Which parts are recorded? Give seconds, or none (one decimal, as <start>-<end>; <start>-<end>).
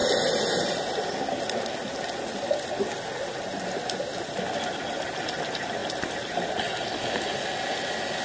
0.0-8.2